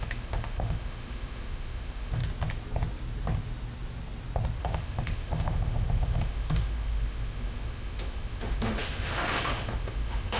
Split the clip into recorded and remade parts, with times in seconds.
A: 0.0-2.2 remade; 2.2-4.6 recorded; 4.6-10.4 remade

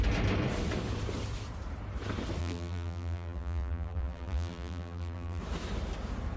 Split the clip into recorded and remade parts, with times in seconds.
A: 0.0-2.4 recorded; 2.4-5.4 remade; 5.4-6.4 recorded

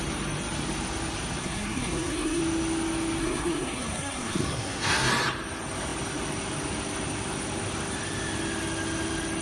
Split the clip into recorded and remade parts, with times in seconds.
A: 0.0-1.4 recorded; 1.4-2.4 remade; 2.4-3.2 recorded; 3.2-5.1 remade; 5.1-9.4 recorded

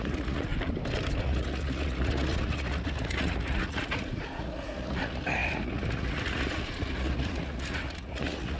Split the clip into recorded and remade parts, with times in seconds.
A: 0.0-0.5 remade; 0.5-1.2 recorded; 1.2-8.6 remade

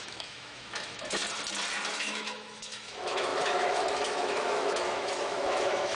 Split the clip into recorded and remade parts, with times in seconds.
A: 0.0-1.2 remade; 1.2-1.9 recorded; 1.9-6.0 remade